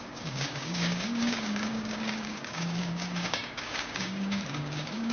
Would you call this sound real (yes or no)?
no